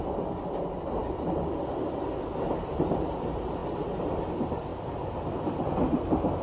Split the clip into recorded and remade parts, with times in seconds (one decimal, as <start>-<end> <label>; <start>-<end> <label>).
0.0-6.4 recorded